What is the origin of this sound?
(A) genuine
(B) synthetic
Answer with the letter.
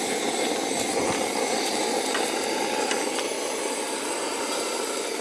A